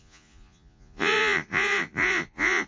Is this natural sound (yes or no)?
no